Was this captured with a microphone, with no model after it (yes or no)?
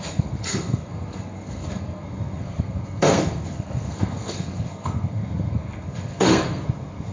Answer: no